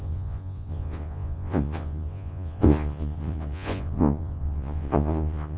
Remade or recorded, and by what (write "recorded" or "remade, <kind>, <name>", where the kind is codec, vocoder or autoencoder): remade, vocoder, Vocos